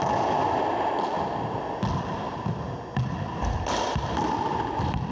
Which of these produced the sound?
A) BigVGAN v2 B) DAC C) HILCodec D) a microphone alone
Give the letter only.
D